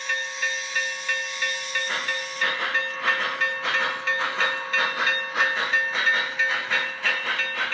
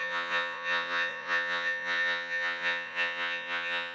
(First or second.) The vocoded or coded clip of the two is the second